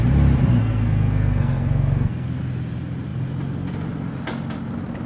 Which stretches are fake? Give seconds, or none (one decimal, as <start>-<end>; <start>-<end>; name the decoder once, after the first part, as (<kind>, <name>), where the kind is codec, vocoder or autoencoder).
0.6-2.4 (codec, SNAC)